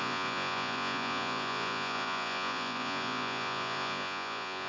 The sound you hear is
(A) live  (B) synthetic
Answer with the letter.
B